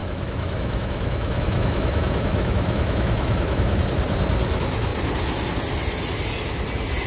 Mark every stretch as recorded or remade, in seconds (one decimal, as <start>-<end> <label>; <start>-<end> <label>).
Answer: 0.0-3.8 remade; 3.8-7.1 recorded